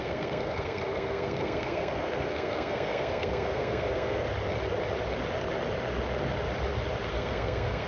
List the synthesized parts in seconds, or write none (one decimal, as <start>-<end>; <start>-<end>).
0.0-4.2; 7.1-7.9